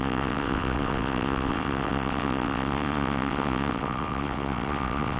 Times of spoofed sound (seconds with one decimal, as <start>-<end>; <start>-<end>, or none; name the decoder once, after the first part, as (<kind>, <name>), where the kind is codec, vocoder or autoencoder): 0.0-5.2 (vocoder, WaveNeXt)